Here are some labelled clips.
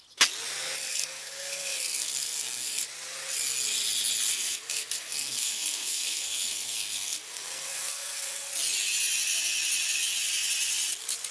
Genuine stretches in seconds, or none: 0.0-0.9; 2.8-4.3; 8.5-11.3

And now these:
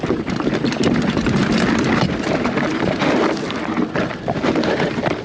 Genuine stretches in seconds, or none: 1.4-2.7